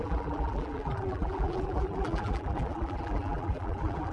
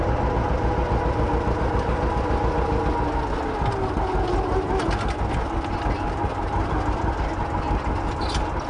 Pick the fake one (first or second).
first